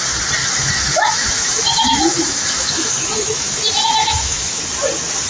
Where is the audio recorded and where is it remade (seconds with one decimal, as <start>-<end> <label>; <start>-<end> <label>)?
0.0-0.4 recorded; 0.4-3.6 remade; 3.6-4.0 recorded; 4.0-4.6 remade; 4.6-5.3 recorded